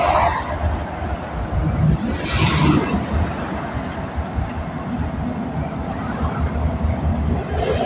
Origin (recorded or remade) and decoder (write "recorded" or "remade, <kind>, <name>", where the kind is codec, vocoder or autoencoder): recorded